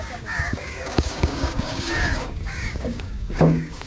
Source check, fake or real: fake